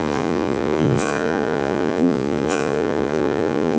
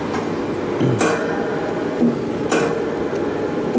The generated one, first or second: first